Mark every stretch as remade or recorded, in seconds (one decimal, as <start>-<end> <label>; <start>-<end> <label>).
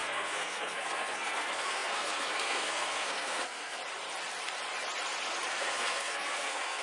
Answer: 0.0-3.8 remade; 3.8-5.5 recorded; 5.5-6.8 remade